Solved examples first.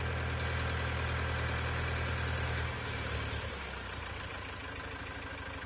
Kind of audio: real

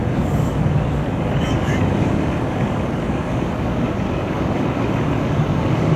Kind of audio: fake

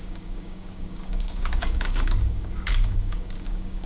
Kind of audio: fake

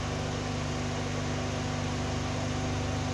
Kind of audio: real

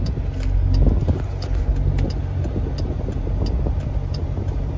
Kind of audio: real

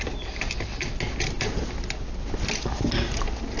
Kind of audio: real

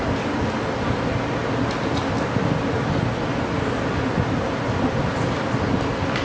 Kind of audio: real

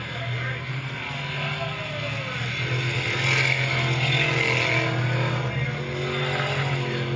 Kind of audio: real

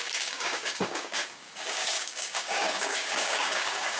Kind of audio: fake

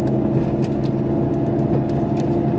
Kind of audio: real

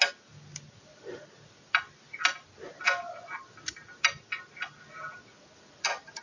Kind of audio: real